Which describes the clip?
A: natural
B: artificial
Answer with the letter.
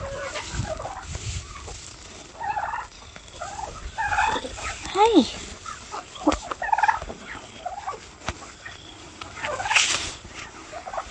A